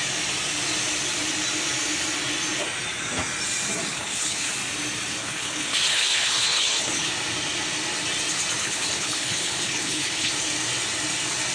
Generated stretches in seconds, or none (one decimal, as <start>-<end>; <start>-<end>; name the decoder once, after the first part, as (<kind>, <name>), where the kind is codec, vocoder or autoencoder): 3.9-4.5 (codec, HILCodec); 5.2-7.1; 8.6-10.3